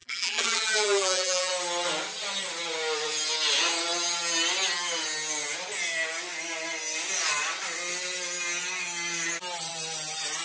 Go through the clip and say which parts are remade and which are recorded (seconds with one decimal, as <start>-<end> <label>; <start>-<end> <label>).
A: 0.0-1.5 remade; 1.5-10.4 recorded